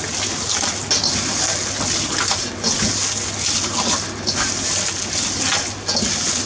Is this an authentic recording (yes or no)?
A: yes